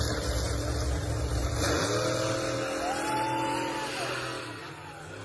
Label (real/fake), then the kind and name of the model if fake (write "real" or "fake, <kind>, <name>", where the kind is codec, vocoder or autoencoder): real